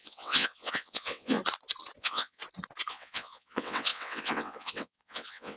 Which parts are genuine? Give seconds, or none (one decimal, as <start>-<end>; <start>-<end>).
1.4-2.0; 2.4-2.9